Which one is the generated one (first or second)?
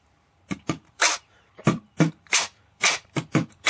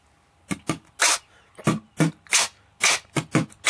first